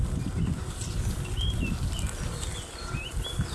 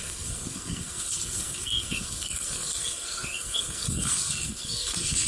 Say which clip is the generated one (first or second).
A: second